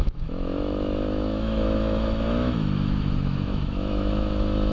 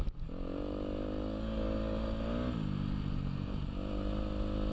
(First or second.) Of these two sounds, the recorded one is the second